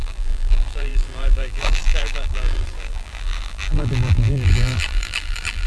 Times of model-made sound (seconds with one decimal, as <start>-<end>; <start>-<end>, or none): 0.0-5.7